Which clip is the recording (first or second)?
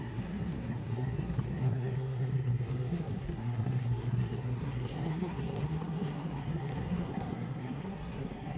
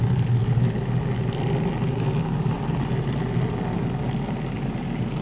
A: second